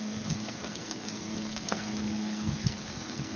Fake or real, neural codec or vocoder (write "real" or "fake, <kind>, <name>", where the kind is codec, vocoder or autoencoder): fake, codec, SNAC